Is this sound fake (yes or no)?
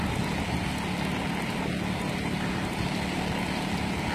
no